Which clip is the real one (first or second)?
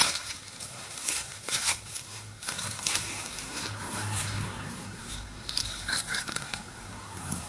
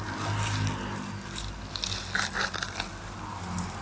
second